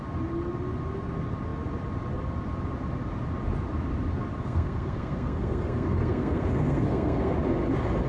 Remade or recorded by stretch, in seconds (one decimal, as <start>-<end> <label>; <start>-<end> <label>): 0.0-4.4 recorded; 4.4-7.3 remade; 7.3-8.1 recorded